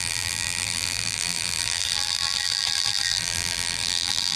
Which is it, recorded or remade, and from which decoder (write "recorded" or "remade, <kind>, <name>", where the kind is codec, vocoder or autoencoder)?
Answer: remade, vocoder, BigVGAN v2